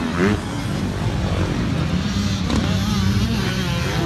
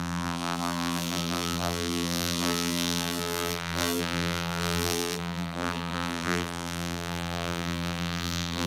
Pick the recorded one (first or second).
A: first